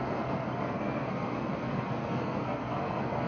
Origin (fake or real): fake